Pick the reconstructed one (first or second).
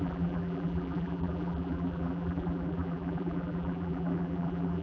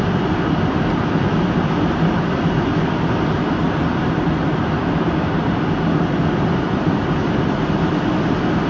first